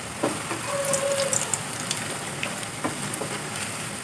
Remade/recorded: recorded